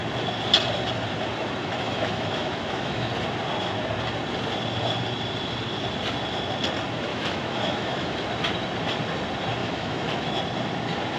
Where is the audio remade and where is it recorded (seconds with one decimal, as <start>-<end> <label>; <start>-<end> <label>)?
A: 0.0-1.6 recorded; 1.6-3.1 remade; 3.1-7.1 recorded; 7.1-8.3 remade; 8.3-9.6 recorded; 9.6-10.4 remade; 10.4-11.2 recorded